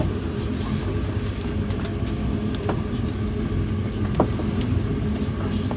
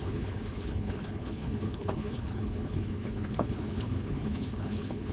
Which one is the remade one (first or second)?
second